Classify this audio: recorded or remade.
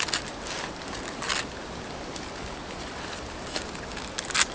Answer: recorded